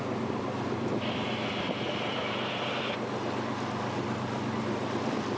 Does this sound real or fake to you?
fake